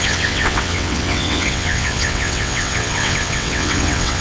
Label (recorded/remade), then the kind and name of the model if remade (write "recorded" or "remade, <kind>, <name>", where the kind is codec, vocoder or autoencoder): remade, vocoder, WaveNeXt